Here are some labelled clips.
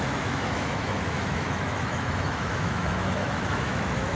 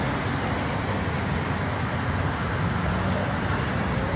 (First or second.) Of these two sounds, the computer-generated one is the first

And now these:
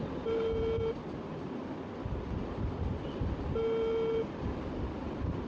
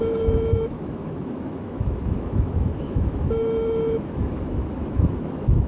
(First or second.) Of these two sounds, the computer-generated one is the second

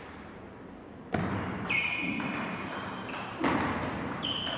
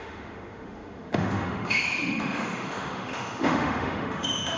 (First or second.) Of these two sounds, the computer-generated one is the second